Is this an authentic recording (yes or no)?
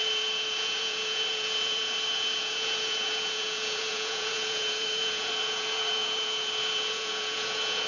no